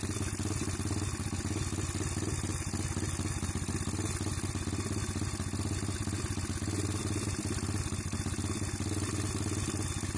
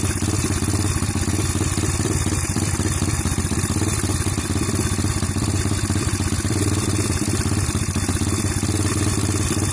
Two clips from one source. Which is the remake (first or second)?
second